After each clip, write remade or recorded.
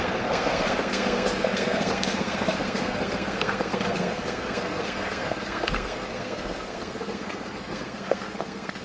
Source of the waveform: remade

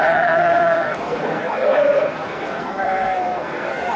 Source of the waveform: remade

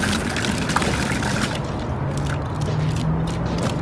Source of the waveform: recorded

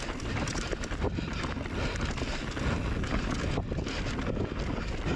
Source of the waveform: recorded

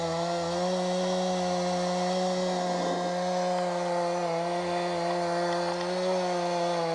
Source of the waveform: recorded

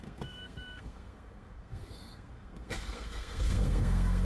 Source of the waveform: remade